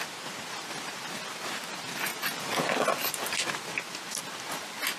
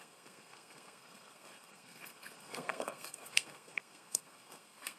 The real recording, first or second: first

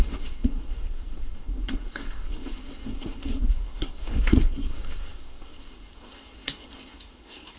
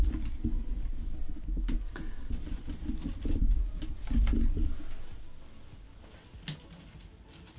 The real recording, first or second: second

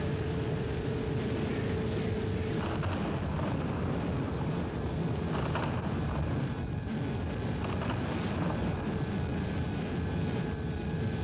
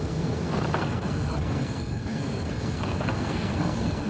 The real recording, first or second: first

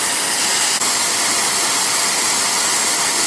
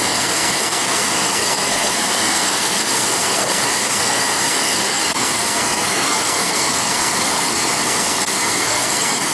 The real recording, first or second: first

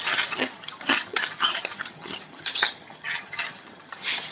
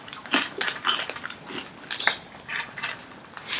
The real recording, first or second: second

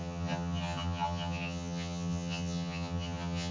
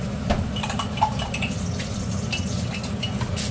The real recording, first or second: second